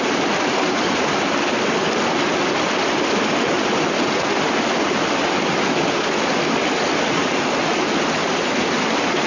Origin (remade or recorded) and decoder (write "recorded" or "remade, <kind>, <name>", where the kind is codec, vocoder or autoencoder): recorded